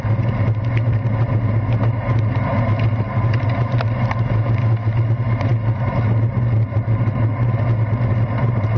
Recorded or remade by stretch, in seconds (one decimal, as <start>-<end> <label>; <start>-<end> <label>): 0.0-8.8 recorded